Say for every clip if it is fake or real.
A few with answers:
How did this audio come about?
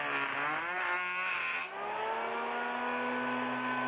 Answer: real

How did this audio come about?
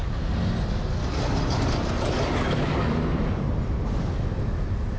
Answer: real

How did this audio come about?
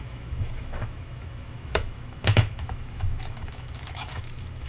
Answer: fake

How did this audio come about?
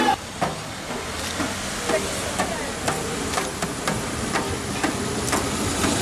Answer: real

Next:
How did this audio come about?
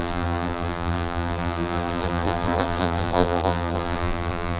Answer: fake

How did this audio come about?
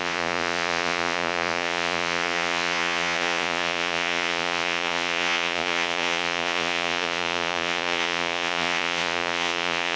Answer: fake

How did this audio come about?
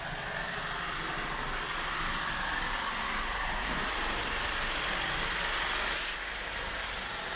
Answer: real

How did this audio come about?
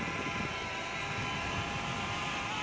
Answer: real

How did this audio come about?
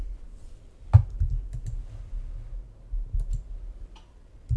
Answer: real